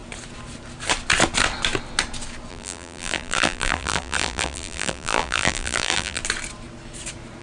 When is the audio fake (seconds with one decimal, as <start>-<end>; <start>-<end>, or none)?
2.5-6.2